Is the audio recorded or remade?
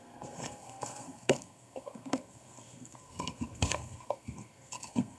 remade